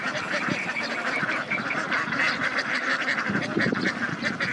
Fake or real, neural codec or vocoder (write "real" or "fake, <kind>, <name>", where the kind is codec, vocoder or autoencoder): fake, vocoder, BigVGAN v2